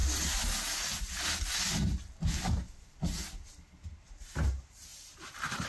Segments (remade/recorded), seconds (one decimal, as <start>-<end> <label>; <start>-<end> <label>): 0.0-4.9 recorded; 4.9-5.7 remade